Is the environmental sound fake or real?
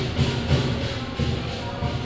real